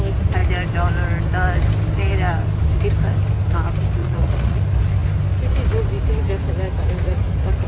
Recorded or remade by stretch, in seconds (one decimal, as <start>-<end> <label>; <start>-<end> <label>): 0.0-4.0 recorded; 4.0-4.6 remade; 4.6-7.7 recorded